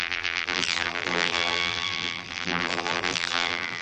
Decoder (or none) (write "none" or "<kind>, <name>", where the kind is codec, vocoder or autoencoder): vocoder, BigVGAN v2